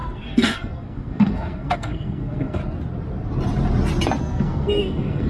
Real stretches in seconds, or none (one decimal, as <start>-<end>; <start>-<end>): 2.6-4.2

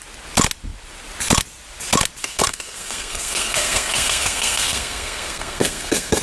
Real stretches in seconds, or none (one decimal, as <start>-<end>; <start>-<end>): 0.0-2.2

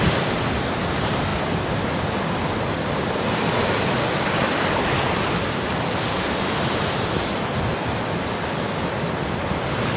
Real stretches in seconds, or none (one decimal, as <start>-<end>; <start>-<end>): 0.0-10.0